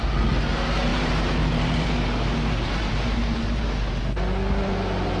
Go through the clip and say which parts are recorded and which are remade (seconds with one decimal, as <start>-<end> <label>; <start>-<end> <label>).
0.0-0.9 recorded; 0.9-4.0 remade; 4.0-5.2 recorded